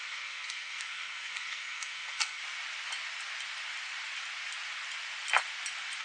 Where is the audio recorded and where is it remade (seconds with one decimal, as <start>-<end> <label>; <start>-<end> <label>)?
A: 0.0-2.4 remade; 2.4-6.0 recorded